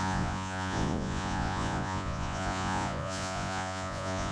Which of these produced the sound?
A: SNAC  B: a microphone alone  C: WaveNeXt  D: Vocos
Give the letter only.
D